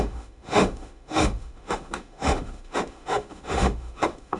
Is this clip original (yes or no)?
no